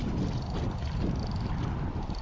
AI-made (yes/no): no